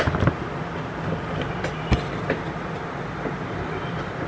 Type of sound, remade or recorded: recorded